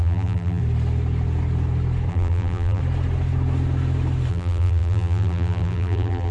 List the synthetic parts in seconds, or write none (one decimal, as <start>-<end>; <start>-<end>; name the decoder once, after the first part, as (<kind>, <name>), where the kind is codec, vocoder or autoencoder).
0.0-0.6 (vocoder, BigVGAN v2); 2.1-2.8; 4.3-6.3